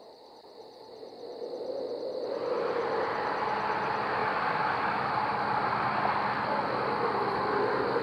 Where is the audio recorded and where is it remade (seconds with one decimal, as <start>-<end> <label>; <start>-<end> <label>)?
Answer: 0.0-8.0 recorded